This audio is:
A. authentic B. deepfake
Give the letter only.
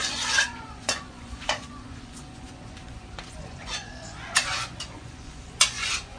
B